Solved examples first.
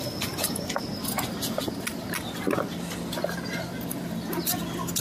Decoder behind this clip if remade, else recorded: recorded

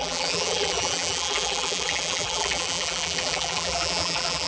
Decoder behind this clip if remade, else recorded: remade, vocoder, BigVGAN v2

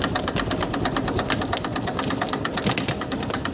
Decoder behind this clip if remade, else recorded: recorded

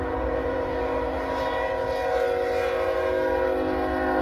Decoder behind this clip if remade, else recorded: recorded